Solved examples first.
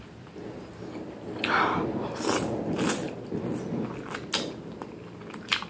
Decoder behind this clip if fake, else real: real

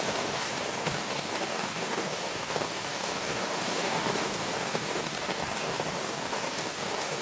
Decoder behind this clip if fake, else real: fake, codec, DAC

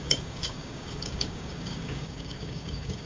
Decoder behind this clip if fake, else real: fake, codec, DAC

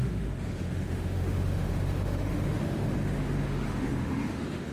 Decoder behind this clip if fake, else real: fake, autoencoder, DAC-VAE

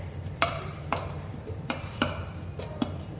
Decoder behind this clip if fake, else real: fake, vocoder, BigVGAN v2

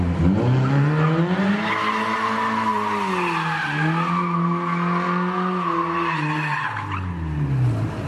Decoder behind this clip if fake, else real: real